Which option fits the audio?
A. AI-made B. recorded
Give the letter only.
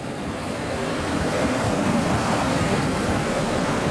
A